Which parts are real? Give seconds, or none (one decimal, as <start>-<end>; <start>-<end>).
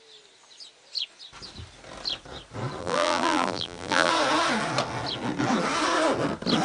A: 0.0-2.8; 4.1-6.6